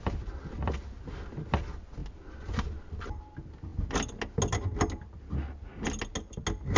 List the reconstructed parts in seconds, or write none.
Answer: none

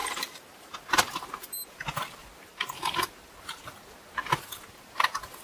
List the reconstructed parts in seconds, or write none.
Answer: 0.0-0.7 (vocoder, BigVGAN v2)

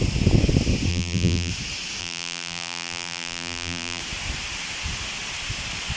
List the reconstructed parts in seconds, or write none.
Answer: 0.9-1.5 (vocoder, BigVGAN v2); 2.0-4.0